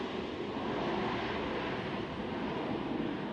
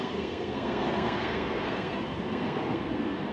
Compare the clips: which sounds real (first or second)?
first